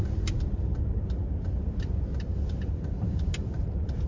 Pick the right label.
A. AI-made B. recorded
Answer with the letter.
B